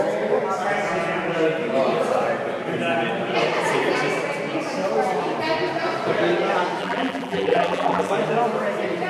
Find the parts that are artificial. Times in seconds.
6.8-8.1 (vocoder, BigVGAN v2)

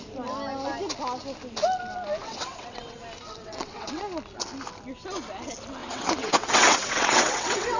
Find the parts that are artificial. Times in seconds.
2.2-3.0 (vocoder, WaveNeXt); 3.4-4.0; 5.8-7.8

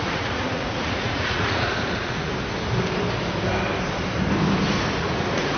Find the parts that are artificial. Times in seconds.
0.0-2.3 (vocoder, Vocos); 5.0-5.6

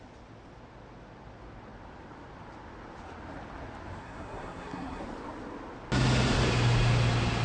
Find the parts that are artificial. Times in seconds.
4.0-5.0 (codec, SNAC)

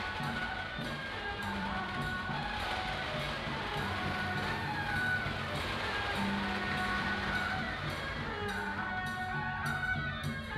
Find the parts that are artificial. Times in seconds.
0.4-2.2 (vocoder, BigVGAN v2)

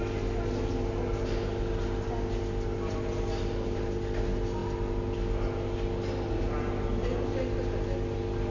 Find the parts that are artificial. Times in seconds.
none

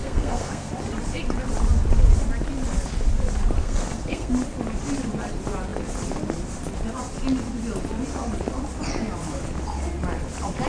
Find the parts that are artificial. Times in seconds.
0.0-0.7 (codec, SNAC); 3.6-4.3